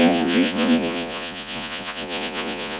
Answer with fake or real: fake